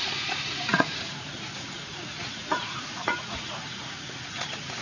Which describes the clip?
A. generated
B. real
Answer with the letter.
A